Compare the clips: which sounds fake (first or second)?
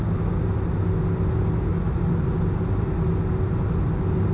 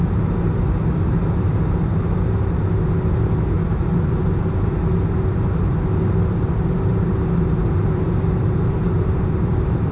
second